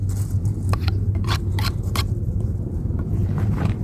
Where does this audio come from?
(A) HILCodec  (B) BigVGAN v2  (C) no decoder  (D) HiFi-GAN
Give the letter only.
B